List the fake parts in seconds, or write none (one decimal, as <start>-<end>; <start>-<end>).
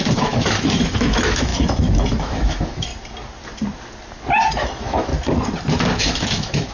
0.0-2.9; 4.5-5.1; 6.0-6.7